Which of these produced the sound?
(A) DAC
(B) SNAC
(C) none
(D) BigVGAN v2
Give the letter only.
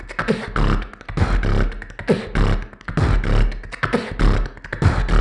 C